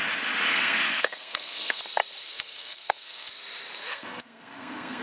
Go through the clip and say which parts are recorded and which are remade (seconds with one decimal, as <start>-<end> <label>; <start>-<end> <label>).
0.0-0.5 recorded; 0.5-1.8 remade; 1.8-2.2 recorded; 2.2-3.3 remade; 3.3-3.9 recorded; 3.9-5.0 remade